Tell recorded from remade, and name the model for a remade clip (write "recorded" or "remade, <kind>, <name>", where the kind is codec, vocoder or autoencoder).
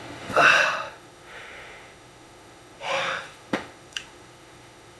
remade, autoencoder, DAC-VAE